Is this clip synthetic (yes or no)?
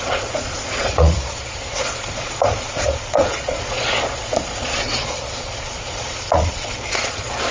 yes